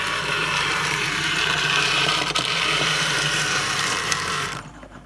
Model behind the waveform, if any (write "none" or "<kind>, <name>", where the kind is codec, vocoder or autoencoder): vocoder, BigVGAN v2